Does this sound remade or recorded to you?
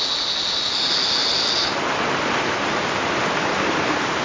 recorded